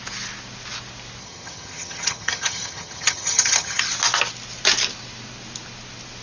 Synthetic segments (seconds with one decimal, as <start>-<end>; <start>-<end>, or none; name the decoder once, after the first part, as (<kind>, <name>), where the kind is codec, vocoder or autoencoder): 1.2-3.8 (vocoder, HiFi-GAN)